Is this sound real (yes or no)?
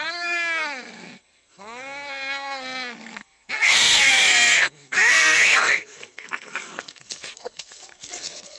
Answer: no